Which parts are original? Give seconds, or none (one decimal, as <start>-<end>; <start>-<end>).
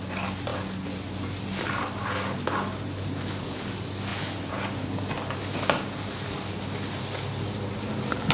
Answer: 0.0-8.3